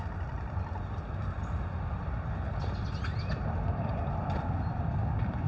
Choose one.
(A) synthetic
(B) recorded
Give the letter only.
B